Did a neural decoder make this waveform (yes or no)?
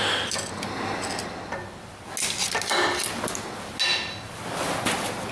no